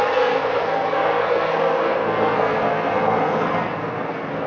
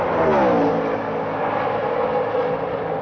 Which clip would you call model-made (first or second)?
first